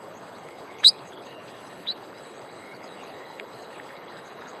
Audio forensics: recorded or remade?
remade